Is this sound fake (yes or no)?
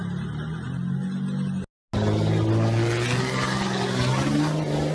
no